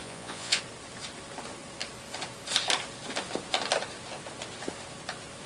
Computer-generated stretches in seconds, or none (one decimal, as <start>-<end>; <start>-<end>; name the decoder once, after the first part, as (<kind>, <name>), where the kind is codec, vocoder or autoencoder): 0.0-0.6 (vocoder, Vocos)